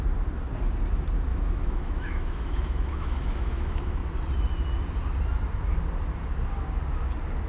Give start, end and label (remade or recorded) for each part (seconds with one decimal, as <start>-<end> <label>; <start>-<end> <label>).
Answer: 0.0-1.3 recorded; 1.3-4.1 remade; 4.1-7.5 recorded